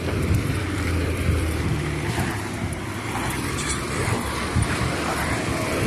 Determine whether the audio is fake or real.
fake